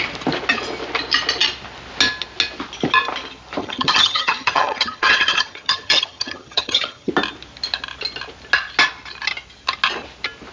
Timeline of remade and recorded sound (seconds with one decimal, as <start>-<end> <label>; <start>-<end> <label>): 0.0-3.6 recorded; 3.6-7.1 remade; 7.1-10.5 recorded